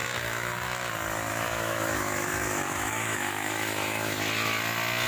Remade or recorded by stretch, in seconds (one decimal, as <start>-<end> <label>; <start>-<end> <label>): 0.0-0.9 remade; 0.9-1.3 recorded; 1.3-4.2 remade; 4.2-5.1 recorded